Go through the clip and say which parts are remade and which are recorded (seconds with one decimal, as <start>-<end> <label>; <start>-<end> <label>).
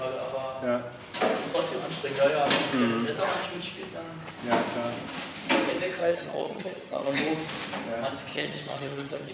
0.0-6.0 recorded; 6.0-7.2 remade; 7.2-8.3 recorded; 8.3-9.3 remade